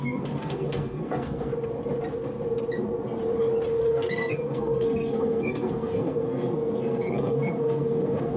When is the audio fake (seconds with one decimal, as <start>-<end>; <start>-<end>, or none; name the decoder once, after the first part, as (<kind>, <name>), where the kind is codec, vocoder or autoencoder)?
0.0-1.5 (codec, SNAC); 3.8-8.4